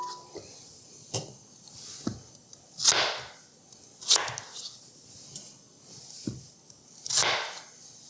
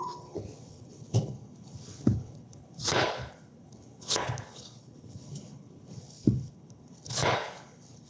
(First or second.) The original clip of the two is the first